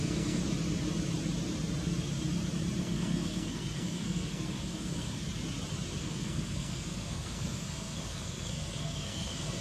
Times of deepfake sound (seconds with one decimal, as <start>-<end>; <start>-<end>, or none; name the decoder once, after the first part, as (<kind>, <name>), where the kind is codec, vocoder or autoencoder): 0.0-0.4 (codec, SNAC); 2.8-5.2; 6.0-9.6